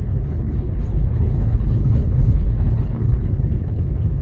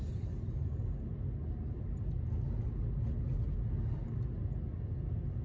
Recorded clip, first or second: second